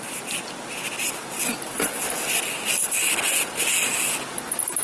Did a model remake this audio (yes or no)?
no